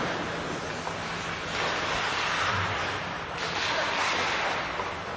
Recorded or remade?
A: recorded